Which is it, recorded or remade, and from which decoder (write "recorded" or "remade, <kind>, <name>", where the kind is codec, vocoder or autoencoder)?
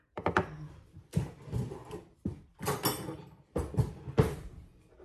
recorded